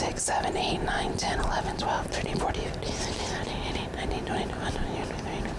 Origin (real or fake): real